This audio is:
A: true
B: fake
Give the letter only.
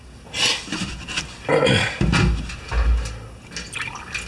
A